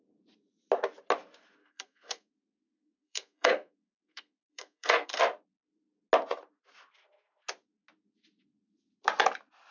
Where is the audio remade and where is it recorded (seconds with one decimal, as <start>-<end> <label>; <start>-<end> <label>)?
0.0-1.6 recorded; 1.6-5.2 remade; 5.2-9.7 recorded